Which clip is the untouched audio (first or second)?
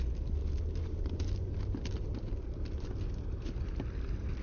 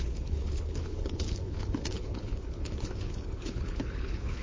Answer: first